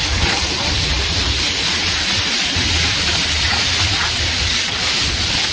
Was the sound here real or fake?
fake